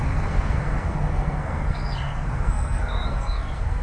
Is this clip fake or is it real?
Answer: fake